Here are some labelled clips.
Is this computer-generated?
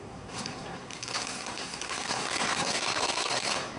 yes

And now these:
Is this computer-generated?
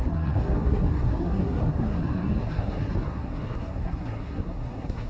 yes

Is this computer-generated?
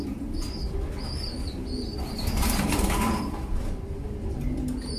no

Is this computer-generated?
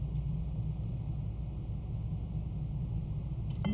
no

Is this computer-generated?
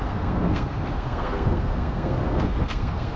yes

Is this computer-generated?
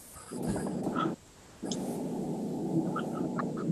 no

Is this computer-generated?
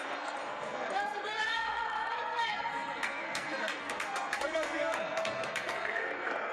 yes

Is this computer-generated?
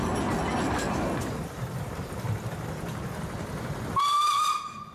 no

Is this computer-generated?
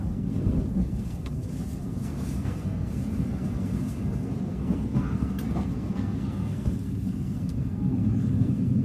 yes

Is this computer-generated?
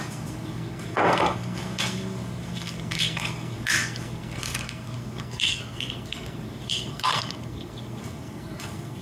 yes